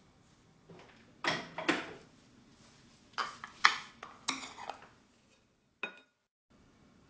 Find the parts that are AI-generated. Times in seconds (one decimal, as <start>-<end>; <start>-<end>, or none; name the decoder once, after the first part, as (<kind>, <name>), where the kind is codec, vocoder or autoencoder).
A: none